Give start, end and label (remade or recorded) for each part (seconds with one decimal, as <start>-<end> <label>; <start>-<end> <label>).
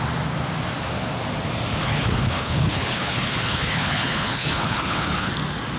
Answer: 0.0-1.8 recorded; 1.8-5.3 remade; 5.3-5.8 recorded